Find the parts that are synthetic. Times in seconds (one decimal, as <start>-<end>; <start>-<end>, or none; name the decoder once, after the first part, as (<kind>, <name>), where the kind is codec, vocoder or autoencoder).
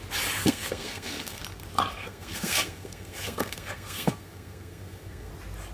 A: 0.4-1.4 (codec, SNAC); 1.9-5.3